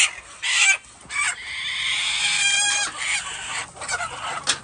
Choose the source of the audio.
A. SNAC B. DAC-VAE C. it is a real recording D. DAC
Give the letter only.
C